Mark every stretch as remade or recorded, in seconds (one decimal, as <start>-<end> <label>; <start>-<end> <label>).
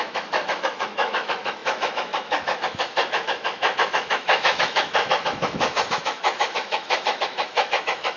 0.0-8.2 remade